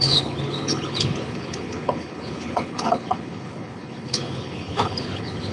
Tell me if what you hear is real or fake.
fake